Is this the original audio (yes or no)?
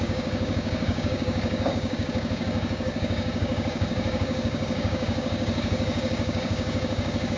no